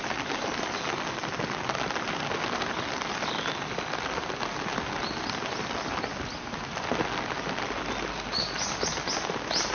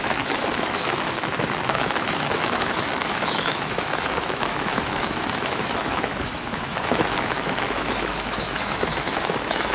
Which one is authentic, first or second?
first